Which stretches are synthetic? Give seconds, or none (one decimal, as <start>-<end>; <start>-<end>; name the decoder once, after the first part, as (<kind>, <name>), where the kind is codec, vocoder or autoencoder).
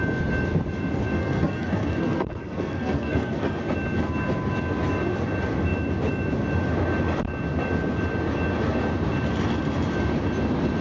1.2-3.6 (codec, SNAC)